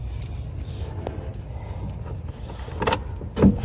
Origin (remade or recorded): recorded